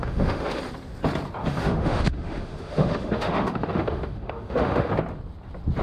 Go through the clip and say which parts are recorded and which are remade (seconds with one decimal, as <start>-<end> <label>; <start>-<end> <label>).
0.0-0.6 remade; 0.6-1.4 recorded; 1.4-4.9 remade; 4.9-5.8 recorded